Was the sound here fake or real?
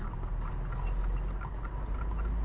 real